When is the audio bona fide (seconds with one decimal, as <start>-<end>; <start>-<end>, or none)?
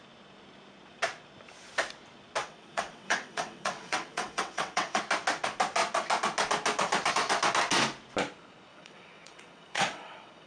0.0-2.4; 5.0-8.7